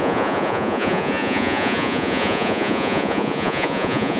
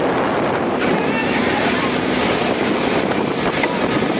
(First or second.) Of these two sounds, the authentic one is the second